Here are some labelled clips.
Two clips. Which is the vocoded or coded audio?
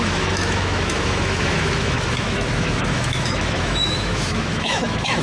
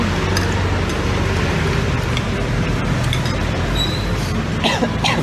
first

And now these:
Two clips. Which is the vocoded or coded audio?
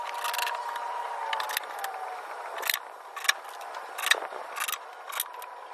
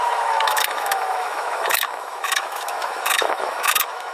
second